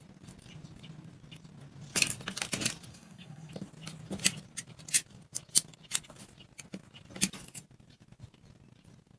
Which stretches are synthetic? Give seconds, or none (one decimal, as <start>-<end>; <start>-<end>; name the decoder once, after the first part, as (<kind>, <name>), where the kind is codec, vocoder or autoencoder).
2.9-3.5 (codec, SNAC)

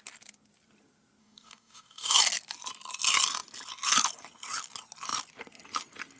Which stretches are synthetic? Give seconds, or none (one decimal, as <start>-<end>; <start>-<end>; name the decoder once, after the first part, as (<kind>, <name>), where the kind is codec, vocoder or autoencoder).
1.2-2.2 (codec, DAC)